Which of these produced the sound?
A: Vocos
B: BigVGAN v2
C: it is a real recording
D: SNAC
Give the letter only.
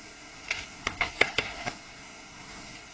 D